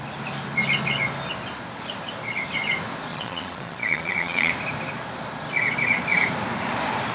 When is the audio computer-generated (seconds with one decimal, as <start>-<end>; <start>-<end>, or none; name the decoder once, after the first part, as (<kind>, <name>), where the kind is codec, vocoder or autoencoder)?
3.1-4.5 (vocoder, Vocos)